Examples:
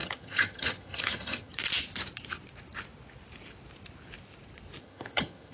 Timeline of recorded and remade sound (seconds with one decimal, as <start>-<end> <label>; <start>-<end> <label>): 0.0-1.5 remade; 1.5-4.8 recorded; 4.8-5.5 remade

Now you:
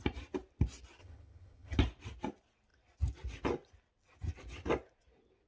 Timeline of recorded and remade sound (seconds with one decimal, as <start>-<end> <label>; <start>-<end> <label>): 0.0-1.0 recorded; 1.0-1.8 remade; 1.8-5.5 recorded

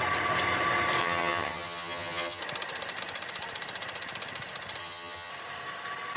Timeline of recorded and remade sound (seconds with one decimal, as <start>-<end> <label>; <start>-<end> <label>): 0.0-1.0 recorded; 1.0-2.4 remade; 2.4-4.8 recorded; 4.8-5.3 remade; 5.3-6.2 recorded